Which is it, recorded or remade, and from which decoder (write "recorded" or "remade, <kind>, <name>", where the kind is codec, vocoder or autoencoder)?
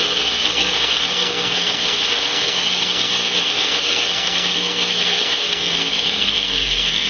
remade, codec, SNAC